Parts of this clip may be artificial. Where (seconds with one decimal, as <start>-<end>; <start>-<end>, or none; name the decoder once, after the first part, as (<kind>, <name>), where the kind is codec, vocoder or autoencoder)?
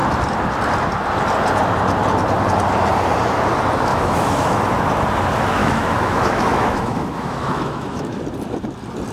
3.9-4.6 (autoencoder, DAC-VAE); 5.6-8.2